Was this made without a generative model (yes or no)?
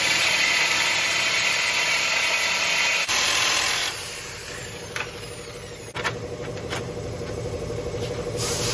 no